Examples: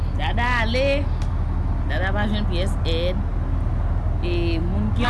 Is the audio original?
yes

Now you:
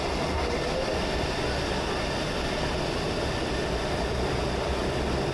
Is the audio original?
yes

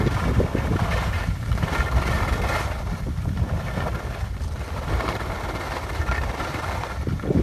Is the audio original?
yes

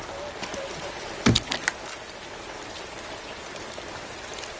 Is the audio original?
yes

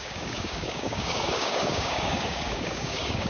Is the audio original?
no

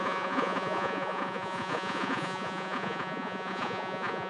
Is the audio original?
no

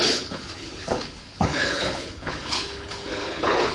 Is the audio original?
no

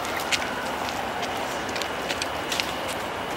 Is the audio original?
yes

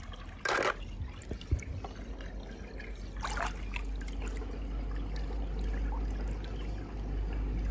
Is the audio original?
yes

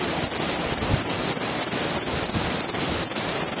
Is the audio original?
yes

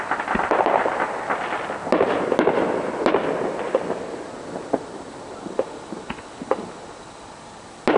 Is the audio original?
yes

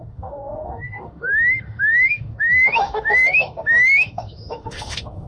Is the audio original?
no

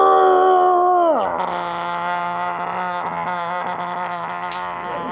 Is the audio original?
yes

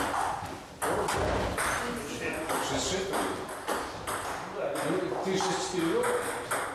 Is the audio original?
yes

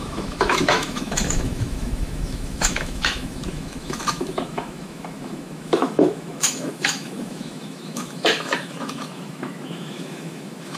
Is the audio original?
no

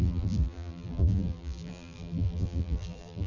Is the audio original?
no